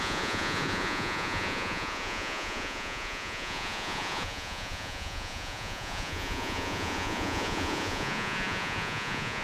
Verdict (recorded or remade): remade